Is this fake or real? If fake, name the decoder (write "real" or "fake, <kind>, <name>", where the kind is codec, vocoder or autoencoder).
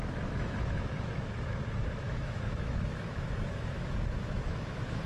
fake, autoencoder, DAC-VAE